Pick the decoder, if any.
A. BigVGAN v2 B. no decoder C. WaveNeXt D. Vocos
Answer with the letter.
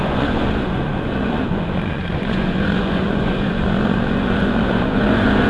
D